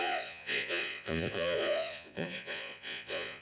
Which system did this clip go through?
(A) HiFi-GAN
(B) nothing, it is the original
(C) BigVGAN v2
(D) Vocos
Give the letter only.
D